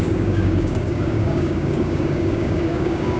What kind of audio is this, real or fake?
fake